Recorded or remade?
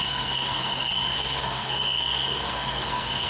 remade